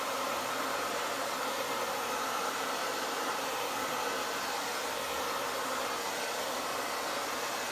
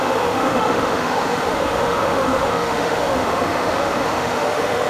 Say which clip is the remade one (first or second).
second